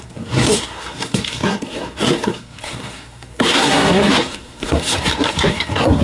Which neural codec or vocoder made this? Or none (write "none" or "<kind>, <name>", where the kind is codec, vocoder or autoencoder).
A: codec, SNAC